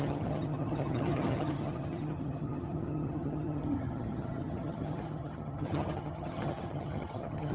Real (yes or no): no